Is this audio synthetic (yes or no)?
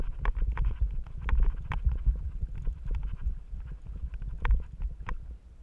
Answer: no